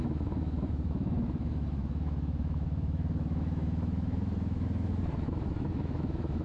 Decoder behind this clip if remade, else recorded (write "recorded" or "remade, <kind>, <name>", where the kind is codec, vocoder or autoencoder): remade, autoencoder, DAC-VAE